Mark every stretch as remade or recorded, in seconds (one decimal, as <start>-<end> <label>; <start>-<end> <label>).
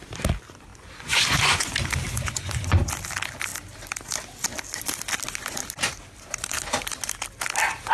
0.0-0.7 recorded; 0.7-1.7 remade; 1.7-2.1 recorded; 2.1-2.8 remade; 2.8-7.9 recorded